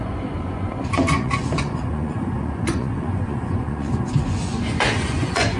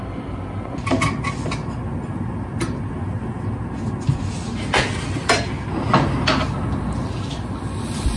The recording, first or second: second